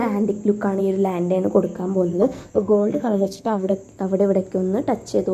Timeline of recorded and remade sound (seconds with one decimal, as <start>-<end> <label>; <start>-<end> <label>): 0.0-2.1 recorded; 2.1-3.7 remade; 3.7-5.3 recorded